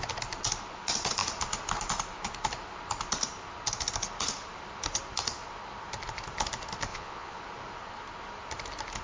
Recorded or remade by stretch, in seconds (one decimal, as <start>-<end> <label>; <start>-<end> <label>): 0.0-6.9 recorded; 6.9-7.4 remade; 7.4-9.0 recorded